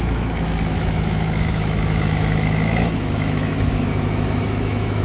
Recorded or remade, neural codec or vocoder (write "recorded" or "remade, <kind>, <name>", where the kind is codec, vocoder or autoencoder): remade, autoencoder, DAC-VAE